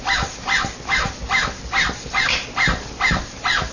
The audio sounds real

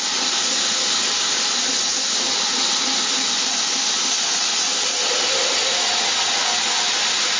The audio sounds real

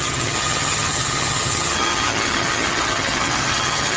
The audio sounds fake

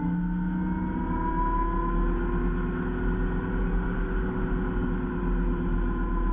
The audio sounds real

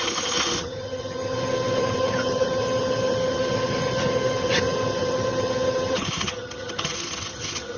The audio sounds fake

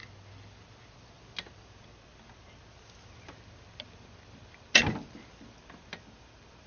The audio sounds real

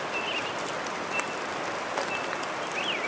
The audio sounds real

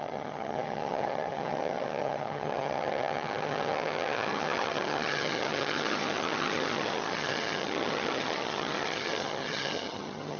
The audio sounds fake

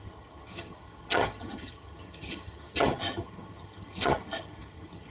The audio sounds fake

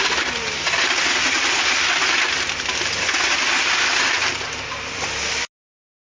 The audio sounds real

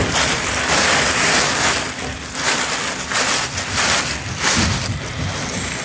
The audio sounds real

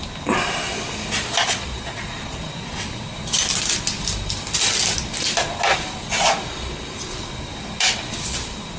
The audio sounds real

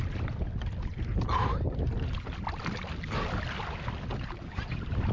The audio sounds real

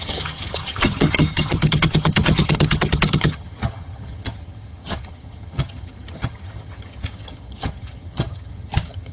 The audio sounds fake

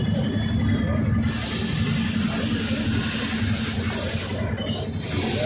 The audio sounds real